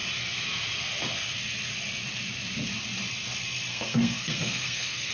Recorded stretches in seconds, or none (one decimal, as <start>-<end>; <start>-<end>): 0.0-3.7